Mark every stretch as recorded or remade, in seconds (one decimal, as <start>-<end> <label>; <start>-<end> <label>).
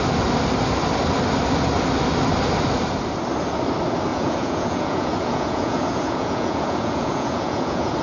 0.0-4.1 recorded; 4.1-8.0 remade